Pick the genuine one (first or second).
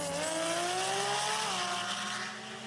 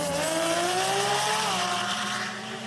first